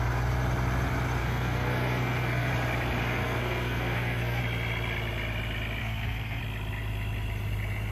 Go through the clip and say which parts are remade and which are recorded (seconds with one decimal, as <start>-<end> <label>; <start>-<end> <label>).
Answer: 0.0-1.2 recorded; 1.2-2.5 remade; 2.5-3.0 recorded; 3.0-4.4 remade; 4.4-5.8 recorded; 5.8-6.4 remade; 6.4-7.9 recorded